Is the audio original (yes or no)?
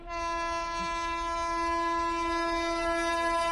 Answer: yes